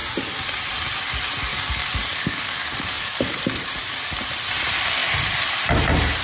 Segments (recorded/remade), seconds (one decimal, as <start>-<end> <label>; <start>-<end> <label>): 0.0-1.5 recorded; 1.5-3.4 remade; 3.4-6.2 recorded